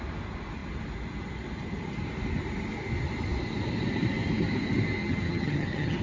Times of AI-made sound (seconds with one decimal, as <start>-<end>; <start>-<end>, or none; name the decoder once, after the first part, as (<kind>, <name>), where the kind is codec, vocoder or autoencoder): 5.0-6.0 (vocoder, HiFi-GAN)